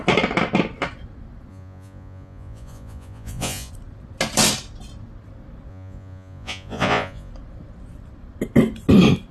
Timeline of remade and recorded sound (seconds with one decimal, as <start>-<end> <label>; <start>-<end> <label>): 0.0-1.5 recorded; 1.5-3.7 remade; 3.7-5.7 recorded; 5.7-7.3 remade; 7.3-9.3 recorded